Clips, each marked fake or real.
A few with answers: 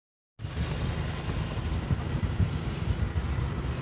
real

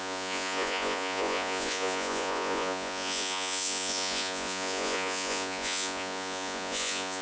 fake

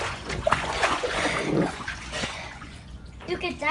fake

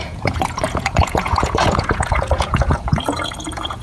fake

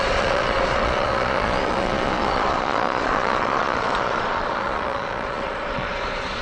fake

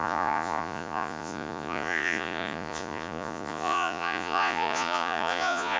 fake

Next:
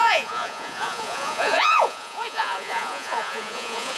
fake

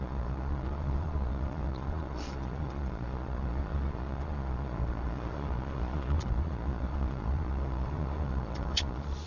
fake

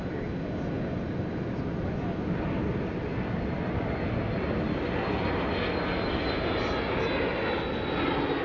real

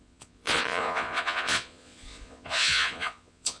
fake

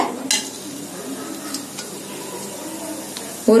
real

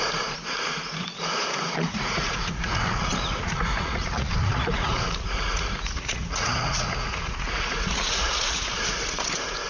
fake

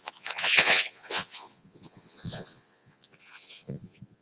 fake